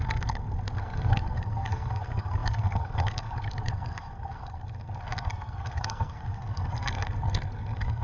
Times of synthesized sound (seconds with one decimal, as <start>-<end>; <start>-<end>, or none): 0.0-8.0